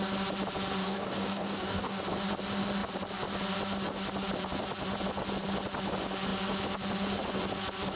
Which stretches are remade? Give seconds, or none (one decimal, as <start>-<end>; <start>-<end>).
0.8-2.0